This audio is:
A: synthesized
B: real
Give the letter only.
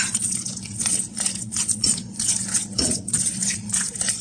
A